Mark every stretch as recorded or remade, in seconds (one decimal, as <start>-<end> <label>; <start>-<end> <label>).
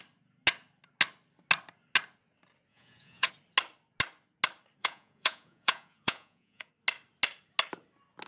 0.0-2.7 recorded; 2.7-3.3 remade; 3.3-4.8 recorded; 4.8-6.7 remade; 6.7-8.3 recorded